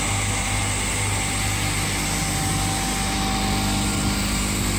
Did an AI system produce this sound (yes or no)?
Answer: no